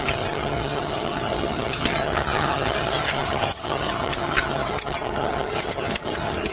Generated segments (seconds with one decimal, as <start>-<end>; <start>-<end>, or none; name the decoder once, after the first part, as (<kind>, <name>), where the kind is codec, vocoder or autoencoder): 0.0-6.5 (vocoder, HiFi-GAN)